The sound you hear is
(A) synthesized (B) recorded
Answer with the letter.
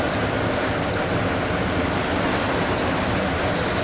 B